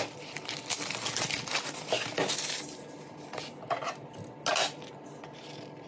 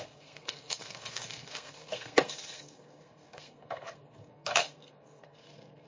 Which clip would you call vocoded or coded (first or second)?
second